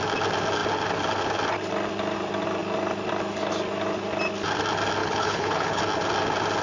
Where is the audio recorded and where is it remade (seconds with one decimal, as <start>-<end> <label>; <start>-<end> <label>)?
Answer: 0.0-5.0 recorded; 5.0-5.8 remade; 5.8-6.6 recorded